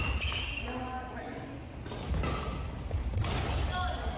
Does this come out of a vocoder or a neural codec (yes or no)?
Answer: no